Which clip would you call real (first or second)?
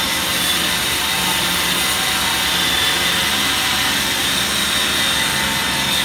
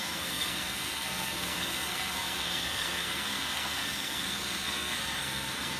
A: first